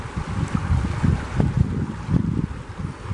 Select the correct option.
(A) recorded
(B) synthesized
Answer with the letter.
A